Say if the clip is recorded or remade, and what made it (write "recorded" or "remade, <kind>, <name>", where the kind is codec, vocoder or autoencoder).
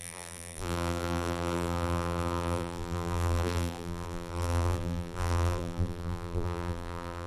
remade, vocoder, BigVGAN v2